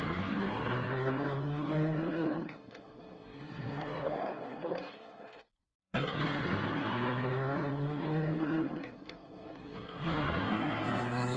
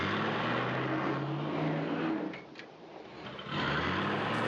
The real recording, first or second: second